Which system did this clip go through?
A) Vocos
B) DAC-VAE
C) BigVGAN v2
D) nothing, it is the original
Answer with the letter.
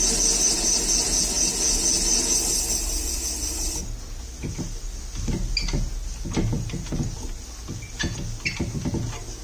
D